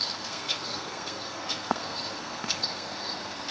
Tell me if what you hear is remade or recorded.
remade